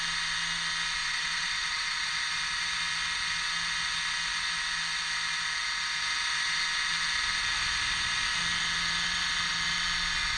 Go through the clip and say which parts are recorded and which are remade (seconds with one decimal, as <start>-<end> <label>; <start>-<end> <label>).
0.0-1.0 recorded; 1.0-2.1 remade; 2.1-10.4 recorded